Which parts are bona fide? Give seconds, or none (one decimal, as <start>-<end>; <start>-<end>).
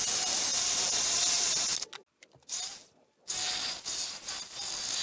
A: 0.0-5.0